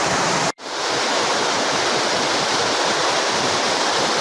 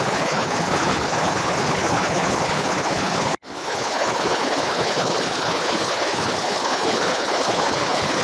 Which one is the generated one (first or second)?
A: second